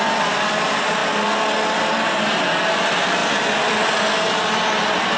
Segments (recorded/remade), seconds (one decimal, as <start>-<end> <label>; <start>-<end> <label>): 0.0-5.2 recorded